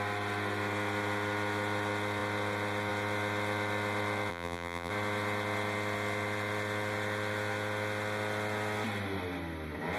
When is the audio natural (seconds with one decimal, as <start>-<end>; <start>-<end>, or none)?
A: 0.0-4.3; 4.9-10.0